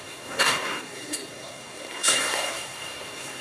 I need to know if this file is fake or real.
fake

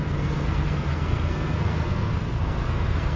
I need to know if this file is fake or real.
fake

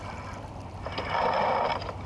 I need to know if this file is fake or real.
real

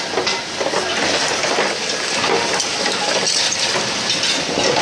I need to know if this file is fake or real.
real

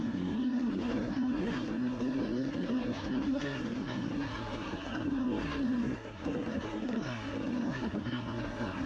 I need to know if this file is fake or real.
fake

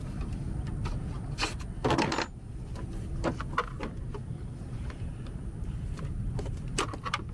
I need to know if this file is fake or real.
real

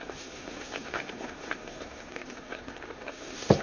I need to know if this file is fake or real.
fake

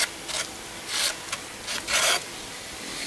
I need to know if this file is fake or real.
real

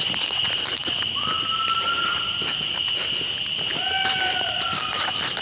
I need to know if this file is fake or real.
real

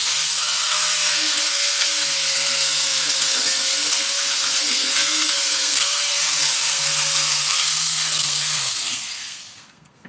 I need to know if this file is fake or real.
fake